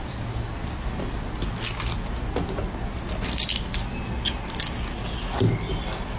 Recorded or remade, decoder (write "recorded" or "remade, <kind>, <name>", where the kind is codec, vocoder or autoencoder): recorded